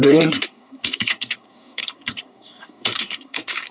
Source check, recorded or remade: remade